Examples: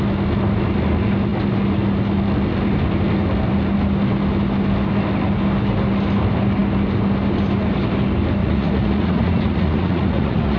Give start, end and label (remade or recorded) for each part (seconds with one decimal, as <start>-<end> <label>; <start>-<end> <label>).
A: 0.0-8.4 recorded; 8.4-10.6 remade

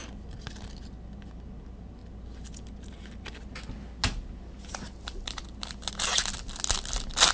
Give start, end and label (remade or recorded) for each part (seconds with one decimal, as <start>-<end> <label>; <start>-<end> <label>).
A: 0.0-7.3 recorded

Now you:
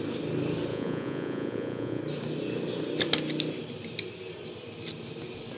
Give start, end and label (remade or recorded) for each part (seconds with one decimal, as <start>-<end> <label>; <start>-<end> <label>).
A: 0.0-0.7 recorded; 0.7-2.0 remade; 2.0-5.6 recorded

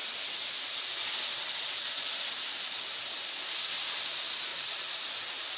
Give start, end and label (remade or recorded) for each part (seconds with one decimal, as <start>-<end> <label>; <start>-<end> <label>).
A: 0.0-4.5 recorded; 4.5-5.1 remade; 5.1-5.6 recorded

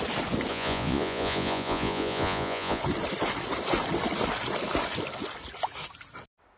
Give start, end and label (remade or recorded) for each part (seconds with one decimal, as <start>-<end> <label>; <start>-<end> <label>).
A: 0.0-0.5 recorded; 0.5-2.8 remade; 2.8-6.6 recorded

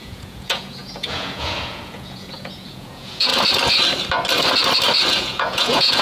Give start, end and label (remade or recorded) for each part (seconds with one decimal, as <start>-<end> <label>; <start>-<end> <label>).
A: 0.0-3.3 remade; 3.3-5.1 recorded; 5.1-6.0 remade

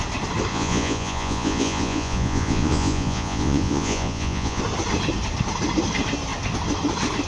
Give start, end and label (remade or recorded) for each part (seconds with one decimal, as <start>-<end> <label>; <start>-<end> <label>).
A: 0.0-0.5 recorded; 0.5-4.6 remade; 4.6-7.3 recorded